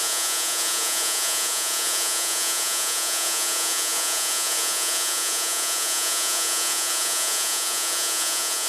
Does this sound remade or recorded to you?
remade